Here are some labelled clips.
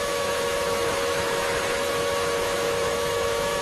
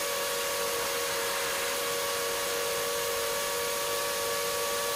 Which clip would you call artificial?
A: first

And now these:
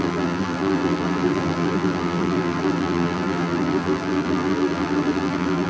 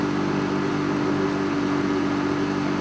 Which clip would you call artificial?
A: first